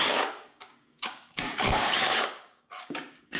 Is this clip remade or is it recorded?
remade